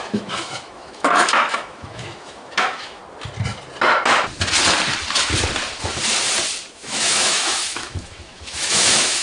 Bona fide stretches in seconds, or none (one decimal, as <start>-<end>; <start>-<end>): 3.0-6.7